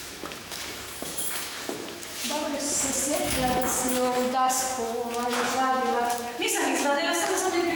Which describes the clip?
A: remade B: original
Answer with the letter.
A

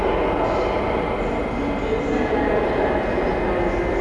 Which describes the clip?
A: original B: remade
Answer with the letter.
A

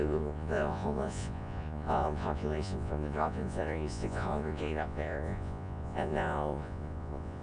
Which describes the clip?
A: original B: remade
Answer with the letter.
B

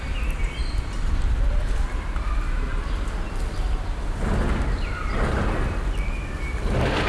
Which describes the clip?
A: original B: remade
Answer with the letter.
A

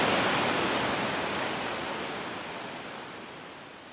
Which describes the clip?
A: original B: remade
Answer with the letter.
A